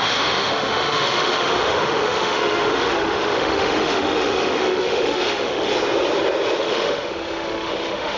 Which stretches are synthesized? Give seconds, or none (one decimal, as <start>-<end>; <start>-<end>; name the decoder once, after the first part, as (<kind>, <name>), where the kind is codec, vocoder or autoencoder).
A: 0.0-5.7 (autoencoder, DAC-VAE); 6.6-8.2